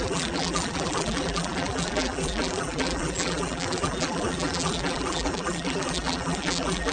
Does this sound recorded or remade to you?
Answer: remade